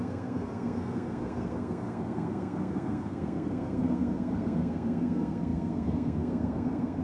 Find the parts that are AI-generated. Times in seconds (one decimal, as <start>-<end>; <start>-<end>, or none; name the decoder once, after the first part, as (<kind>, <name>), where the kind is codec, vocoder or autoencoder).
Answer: 0.0-7.0 (codec, SNAC)